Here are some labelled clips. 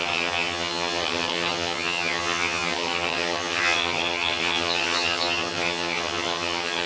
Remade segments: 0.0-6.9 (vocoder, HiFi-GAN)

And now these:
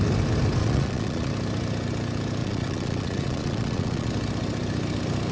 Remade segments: 0.6-1.3 (vocoder, Vocos); 2.4-4.1

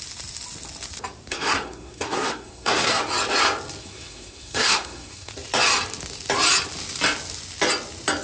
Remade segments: 1.3-3.0 (codec, SNAC); 3.8-5.3

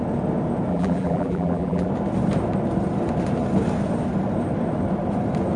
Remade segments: 0.7-1.9 (vocoder, BigVGAN v2)

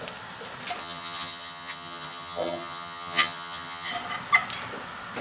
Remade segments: 0.8-3.9 (vocoder, HiFi-GAN)

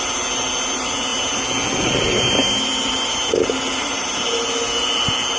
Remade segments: none

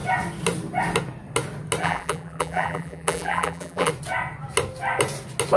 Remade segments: 1.8-3.9 (vocoder, BigVGAN v2)